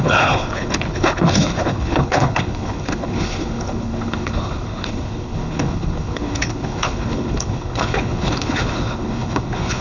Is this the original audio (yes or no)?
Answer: no